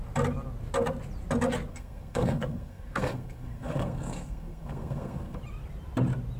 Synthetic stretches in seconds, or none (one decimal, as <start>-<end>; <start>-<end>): 1.7-5.4